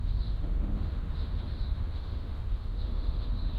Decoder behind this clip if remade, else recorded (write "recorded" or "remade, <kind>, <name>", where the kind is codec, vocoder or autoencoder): remade, autoencoder, DAC-VAE